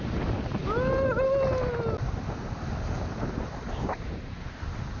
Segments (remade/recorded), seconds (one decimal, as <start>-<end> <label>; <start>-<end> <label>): 0.0-0.6 remade; 0.6-3.4 recorded; 3.4-5.0 remade